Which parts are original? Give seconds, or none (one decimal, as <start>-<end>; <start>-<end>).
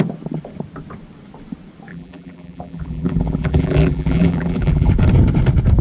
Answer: 0.0-1.9; 4.9-5.8